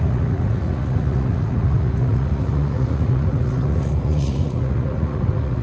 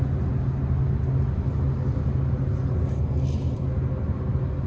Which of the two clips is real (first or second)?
second